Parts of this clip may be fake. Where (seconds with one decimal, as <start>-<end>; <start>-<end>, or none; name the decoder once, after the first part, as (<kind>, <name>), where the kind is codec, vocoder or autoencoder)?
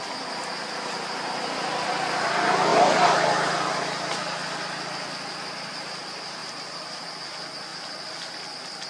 6.4-7.1 (vocoder, BigVGAN v2); 7.7-8.4